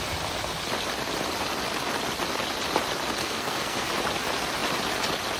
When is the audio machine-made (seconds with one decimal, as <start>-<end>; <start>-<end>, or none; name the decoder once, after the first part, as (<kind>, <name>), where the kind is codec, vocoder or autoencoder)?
3.2-3.9 (codec, SNAC)